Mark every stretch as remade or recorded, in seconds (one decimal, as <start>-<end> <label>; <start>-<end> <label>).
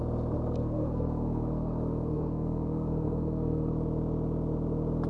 0.0-0.6 recorded; 0.6-3.7 remade; 3.7-5.1 recorded